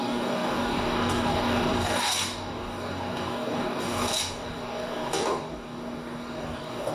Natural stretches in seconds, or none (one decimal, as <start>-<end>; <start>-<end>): none